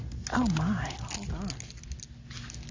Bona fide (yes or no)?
yes